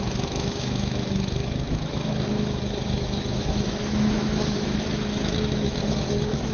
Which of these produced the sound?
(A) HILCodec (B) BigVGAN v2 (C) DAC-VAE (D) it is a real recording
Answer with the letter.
C